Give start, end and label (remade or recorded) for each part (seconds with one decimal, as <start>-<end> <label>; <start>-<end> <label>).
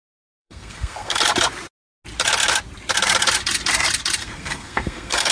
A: 0.0-0.4 recorded; 0.4-1.2 remade; 1.2-4.2 recorded; 4.2-5.3 remade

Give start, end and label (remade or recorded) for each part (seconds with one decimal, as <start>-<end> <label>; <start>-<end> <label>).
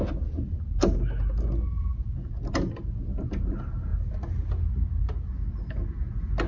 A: 0.0-6.5 recorded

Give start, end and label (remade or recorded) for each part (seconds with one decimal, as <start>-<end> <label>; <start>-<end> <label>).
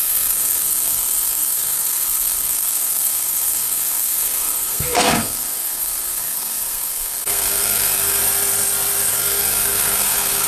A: 0.0-8.2 remade; 8.2-9.1 recorded; 9.1-10.5 remade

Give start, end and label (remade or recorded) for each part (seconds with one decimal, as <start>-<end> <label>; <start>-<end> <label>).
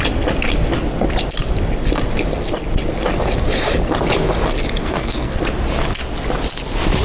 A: 0.0-4.8 recorded; 4.8-5.4 remade; 5.4-7.0 recorded